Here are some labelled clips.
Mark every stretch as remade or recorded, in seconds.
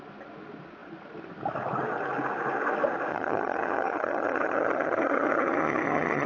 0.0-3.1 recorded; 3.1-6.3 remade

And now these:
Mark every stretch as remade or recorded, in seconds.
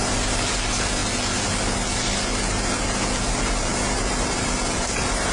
0.0-5.3 recorded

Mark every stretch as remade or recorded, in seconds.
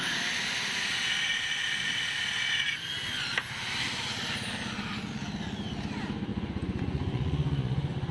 0.0-6.3 recorded; 6.3-8.1 remade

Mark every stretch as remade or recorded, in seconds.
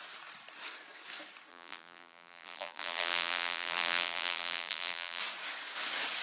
0.0-1.5 recorded; 1.5-5.2 remade; 5.2-6.2 recorded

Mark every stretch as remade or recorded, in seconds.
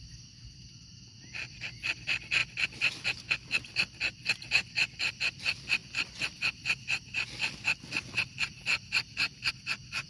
0.0-5.8 recorded; 5.8-9.5 remade; 9.5-10.1 recorded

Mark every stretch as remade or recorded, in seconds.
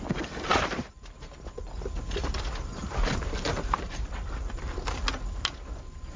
0.0-6.2 recorded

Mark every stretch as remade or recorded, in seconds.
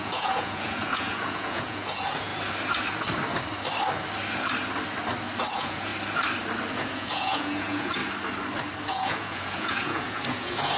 0.0-2.3 remade; 2.3-5.5 recorded; 5.5-5.9 remade; 5.9-6.7 recorded; 6.7-8.0 remade; 8.0-8.9 recorded; 8.9-10.8 remade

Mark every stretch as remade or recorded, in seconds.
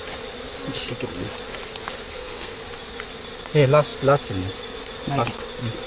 0.0-2.1 recorded; 2.1-2.6 remade; 2.6-5.9 recorded